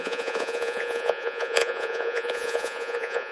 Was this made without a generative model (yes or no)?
no